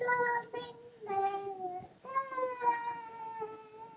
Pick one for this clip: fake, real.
real